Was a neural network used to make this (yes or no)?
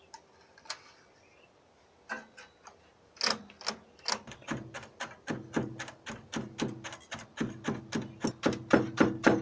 no